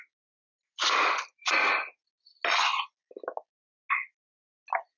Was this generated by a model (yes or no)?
no